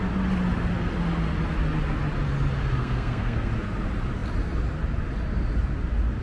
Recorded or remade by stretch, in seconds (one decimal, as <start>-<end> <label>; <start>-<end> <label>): 0.0-2.6 recorded; 2.6-3.5 remade; 3.5-6.2 recorded